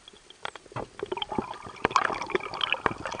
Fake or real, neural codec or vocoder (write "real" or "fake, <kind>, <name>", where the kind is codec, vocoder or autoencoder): real